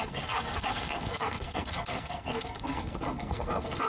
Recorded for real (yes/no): no